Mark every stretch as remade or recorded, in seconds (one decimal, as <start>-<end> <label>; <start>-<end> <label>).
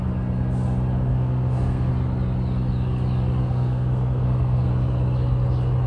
0.0-1.1 recorded; 1.1-1.9 remade; 1.9-3.4 recorded; 3.4-4.7 remade; 4.7-5.9 recorded